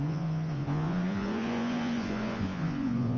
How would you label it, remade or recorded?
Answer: remade